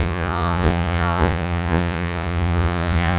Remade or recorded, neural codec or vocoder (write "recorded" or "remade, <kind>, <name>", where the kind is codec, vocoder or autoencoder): remade, vocoder, Vocos